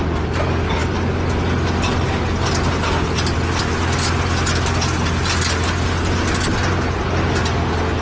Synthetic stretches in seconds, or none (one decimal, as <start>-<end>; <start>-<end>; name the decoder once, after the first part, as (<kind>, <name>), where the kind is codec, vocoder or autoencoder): none